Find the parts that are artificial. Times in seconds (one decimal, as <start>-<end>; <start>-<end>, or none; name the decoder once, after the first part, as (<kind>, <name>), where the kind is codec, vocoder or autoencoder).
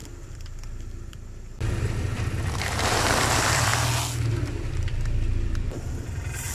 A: 0.0-3.7 (vocoder, BigVGAN v2); 4.3-6.5